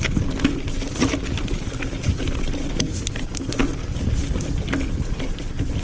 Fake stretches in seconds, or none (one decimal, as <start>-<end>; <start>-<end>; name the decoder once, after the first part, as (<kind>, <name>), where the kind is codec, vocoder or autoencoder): none